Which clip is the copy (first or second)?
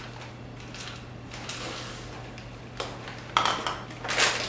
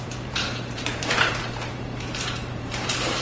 second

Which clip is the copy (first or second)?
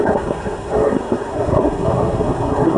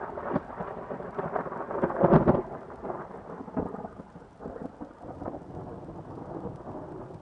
first